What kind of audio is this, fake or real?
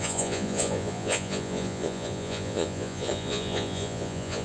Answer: fake